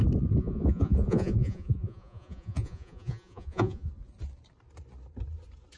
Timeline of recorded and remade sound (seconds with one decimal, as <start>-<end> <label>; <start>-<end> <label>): 0.0-0.4 recorded; 0.4-3.9 remade; 3.9-5.8 recorded